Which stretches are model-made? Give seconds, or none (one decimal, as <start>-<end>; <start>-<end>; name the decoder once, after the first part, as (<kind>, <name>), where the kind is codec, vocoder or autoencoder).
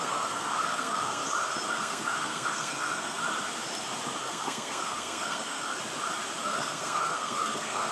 0.0-1.2 (codec, SNAC); 1.7-3.2; 4.2-5.8; 6.4-7.9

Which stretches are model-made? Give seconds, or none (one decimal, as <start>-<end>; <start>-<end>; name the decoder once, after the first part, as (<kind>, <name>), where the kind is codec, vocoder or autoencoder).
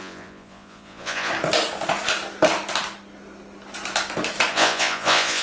0.0-1.3 (vocoder, Vocos); 4.5-5.4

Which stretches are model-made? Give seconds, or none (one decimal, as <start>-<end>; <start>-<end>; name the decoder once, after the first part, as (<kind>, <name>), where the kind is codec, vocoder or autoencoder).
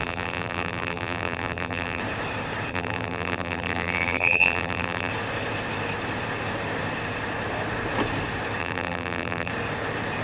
0.0-2.0 (vocoder, BigVGAN v2); 2.7-5.1; 8.6-9.5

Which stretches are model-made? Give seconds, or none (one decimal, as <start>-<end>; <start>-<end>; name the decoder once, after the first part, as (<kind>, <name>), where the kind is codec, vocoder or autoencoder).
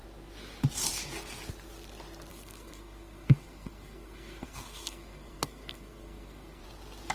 2.3-6.6 (codec, SNAC)